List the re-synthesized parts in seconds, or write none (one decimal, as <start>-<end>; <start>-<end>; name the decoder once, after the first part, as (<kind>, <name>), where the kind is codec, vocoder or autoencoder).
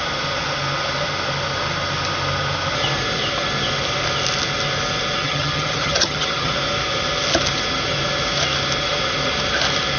5.2-6.5 (vocoder, HiFi-GAN)